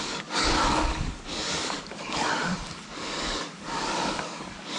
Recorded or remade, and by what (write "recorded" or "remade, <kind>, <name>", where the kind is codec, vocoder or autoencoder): remade, codec, DAC